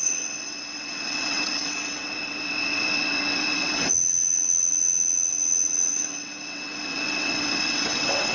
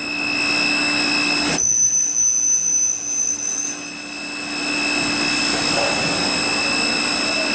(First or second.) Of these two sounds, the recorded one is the second